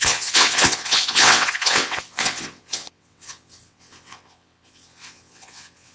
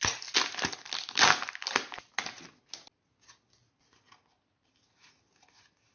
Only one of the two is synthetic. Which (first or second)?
first